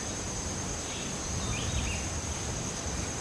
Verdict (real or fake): real